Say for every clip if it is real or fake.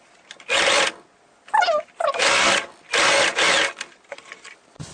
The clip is real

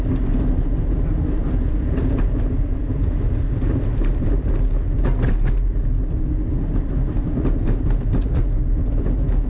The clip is real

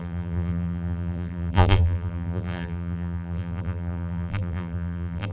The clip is fake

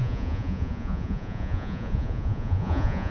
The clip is fake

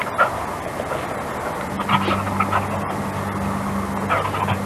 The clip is real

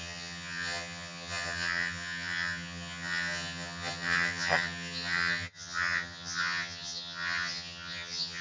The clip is fake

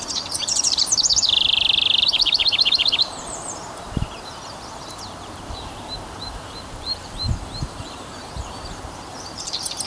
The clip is fake